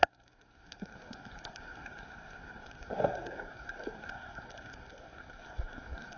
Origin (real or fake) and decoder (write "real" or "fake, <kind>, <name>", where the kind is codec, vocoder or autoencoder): fake, codec, SNAC